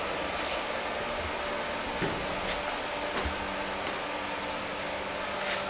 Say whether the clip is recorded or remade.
recorded